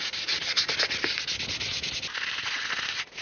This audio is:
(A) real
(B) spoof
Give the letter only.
A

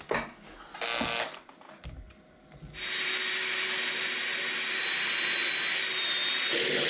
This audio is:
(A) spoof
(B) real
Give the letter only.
B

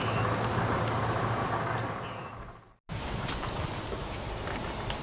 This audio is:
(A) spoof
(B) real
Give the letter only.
B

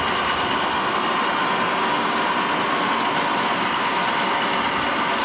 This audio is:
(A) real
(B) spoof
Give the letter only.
A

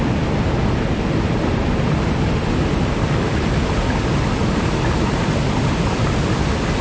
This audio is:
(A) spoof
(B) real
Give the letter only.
B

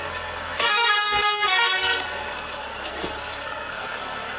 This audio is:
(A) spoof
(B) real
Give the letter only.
A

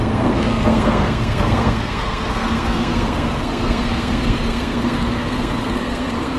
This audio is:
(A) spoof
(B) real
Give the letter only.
A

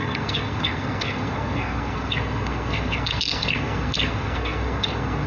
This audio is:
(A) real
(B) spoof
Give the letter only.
B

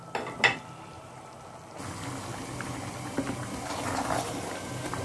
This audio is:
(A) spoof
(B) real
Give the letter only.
B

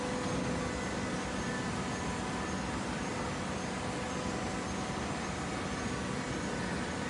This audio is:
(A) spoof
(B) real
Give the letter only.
B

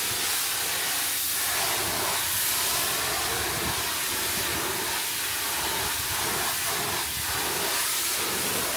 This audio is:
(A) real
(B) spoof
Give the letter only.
A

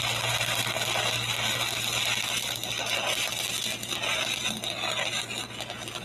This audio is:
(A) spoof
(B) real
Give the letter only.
B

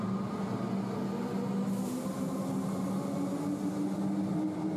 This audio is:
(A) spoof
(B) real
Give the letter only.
B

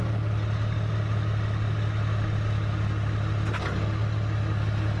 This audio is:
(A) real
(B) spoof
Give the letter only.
A